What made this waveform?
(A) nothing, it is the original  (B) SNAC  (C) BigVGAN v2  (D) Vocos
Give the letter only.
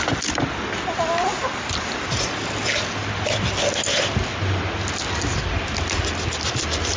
A